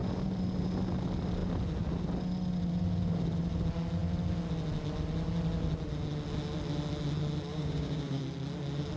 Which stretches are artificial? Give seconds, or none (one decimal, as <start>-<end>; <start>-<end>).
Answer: 7.5-8.2